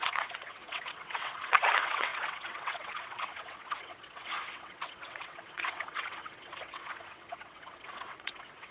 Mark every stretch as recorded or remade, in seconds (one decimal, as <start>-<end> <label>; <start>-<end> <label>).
0.0-8.7 remade